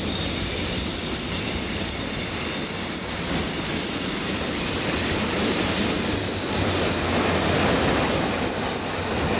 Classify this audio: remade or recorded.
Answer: recorded